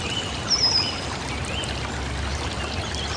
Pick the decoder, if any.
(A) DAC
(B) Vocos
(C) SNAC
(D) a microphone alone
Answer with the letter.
D